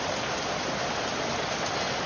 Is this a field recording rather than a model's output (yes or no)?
yes